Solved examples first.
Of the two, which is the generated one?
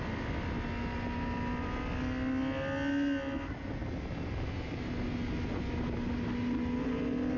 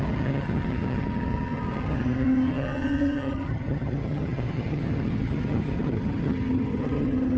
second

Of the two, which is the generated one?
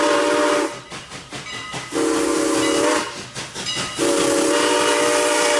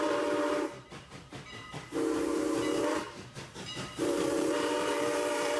second